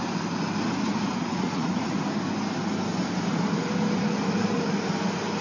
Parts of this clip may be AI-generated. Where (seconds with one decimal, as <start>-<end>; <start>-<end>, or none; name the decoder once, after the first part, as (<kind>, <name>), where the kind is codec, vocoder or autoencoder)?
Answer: 1.1-1.9 (vocoder, Vocos)

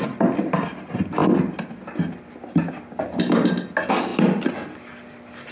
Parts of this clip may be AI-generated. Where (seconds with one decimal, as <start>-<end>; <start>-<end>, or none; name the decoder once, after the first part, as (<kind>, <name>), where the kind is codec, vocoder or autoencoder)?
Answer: none

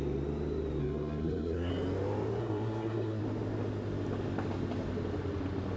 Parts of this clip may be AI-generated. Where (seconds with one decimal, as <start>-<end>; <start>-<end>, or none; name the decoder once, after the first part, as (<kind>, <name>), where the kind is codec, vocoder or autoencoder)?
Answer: 0.8-1.7 (codec, SNAC); 2.4-3.2

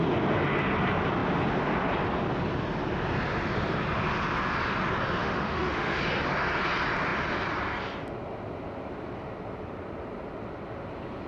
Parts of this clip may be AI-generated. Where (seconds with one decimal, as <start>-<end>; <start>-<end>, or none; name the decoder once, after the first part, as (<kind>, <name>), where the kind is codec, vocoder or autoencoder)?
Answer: 5.2-6.0 (autoencoder, DAC-VAE)

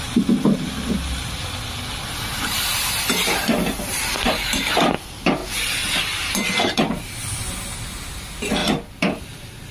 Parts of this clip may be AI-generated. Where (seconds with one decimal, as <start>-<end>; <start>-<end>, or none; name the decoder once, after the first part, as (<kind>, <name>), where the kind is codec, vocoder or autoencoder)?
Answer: none

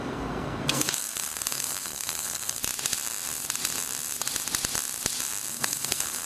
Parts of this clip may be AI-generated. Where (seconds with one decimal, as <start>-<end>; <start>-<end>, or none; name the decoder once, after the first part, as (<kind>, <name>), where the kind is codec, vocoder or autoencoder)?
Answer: 0.0-2.6 (codec, SNAC); 5.5-6.3